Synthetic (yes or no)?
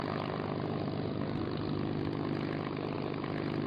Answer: no